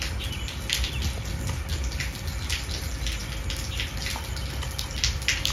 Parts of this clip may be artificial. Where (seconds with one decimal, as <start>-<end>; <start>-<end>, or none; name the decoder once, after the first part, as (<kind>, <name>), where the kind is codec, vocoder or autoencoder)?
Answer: none